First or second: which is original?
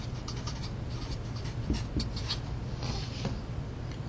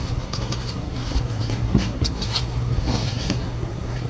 first